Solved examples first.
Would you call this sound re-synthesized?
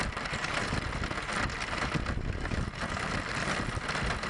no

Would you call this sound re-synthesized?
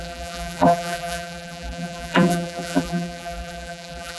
yes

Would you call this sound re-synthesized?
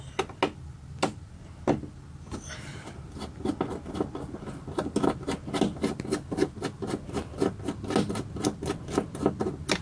no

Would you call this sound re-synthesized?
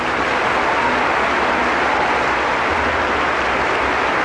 no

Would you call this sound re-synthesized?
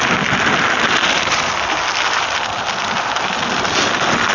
no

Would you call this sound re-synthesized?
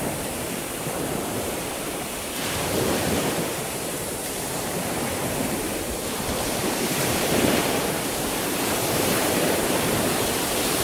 yes